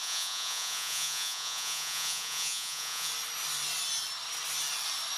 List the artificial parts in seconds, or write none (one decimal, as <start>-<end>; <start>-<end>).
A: 0.0-3.1